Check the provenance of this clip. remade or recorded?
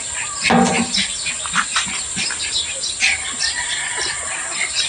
recorded